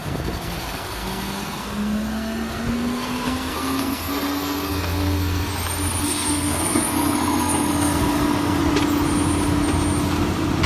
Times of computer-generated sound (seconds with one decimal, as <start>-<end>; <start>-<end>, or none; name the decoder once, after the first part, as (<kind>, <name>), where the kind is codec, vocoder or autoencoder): 0.0-5.5 (codec, SNAC); 6.0-8.6